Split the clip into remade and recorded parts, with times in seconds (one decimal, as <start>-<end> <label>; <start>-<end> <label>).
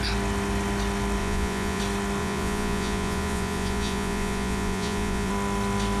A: 0.0-1.2 recorded; 1.2-1.8 remade; 1.8-2.2 recorded; 2.2-5.3 remade; 5.3-6.0 recorded